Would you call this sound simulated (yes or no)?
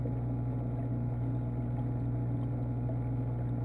no